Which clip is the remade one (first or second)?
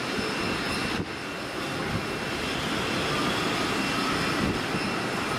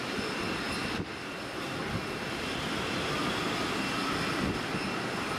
second